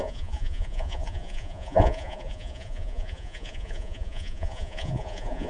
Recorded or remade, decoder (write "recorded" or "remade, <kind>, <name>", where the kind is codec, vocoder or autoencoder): remade, vocoder, Vocos